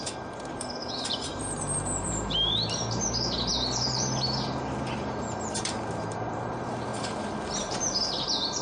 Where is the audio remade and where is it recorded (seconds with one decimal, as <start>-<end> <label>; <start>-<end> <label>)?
0.0-6.9 remade; 6.9-7.7 recorded; 7.7-8.6 remade